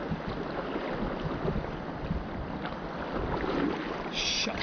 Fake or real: real